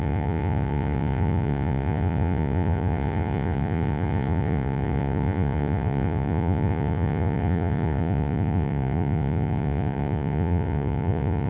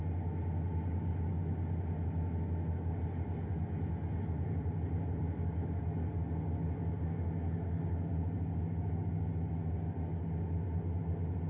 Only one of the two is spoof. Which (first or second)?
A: first